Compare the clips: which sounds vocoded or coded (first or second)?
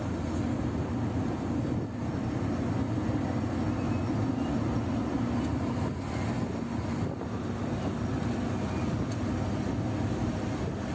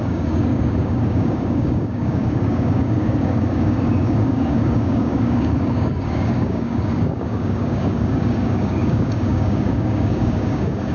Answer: second